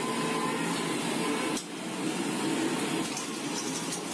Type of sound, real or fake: real